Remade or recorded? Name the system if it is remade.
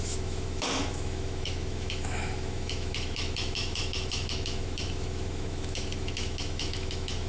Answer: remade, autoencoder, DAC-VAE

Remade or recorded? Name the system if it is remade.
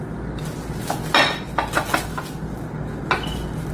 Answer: recorded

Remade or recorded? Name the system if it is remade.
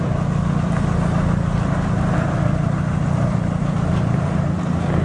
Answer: recorded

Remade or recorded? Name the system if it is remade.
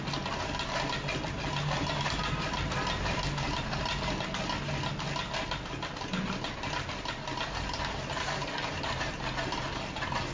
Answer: recorded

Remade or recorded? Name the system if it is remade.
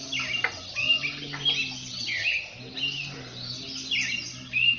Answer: recorded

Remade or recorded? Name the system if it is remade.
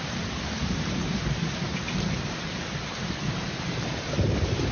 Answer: remade, vocoder, BigVGAN v2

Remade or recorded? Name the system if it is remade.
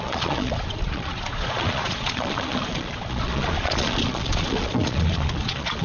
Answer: remade, vocoder, Vocos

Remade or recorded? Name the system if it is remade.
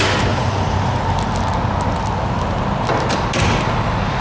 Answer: recorded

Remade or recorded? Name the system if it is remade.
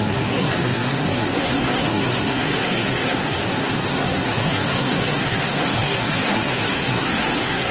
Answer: remade, codec, SNAC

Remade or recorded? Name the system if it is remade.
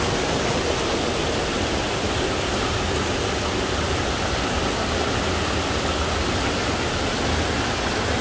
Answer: recorded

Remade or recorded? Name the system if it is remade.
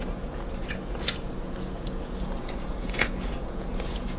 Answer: remade, vocoder, Vocos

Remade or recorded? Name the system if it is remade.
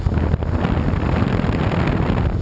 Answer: recorded